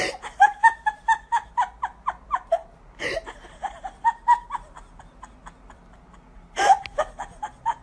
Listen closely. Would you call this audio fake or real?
real